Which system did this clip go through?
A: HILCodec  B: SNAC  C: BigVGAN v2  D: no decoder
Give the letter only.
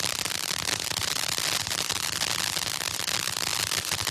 D